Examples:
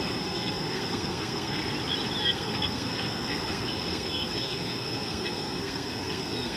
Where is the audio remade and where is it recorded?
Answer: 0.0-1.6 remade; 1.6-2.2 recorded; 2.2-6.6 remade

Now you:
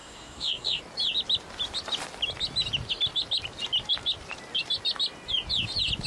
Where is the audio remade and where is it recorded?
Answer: 0.0-0.8 remade; 0.8-6.1 recorded

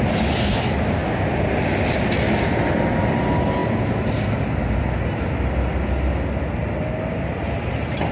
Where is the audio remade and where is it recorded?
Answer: 0.0-8.1 recorded

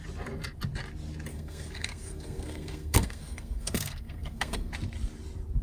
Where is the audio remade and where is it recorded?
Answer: 0.0-1.3 recorded; 1.3-4.7 remade; 4.7-5.6 recorded

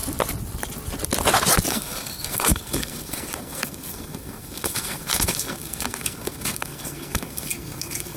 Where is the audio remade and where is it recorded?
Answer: 0.0-1.7 recorded; 1.7-8.2 remade